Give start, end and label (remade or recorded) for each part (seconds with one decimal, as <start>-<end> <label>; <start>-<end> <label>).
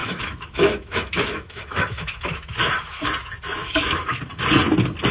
0.0-3.1 remade; 3.1-3.6 recorded; 3.6-4.2 remade; 4.2-5.1 recorded